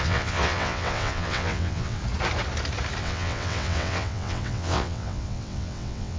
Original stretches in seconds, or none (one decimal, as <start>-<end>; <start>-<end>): 2.0-3.0